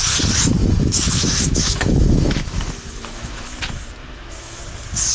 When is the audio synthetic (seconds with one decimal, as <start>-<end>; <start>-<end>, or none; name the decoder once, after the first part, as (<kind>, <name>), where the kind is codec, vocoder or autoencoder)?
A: 0.6-3.6 (autoencoder, DAC-VAE); 4.0-4.6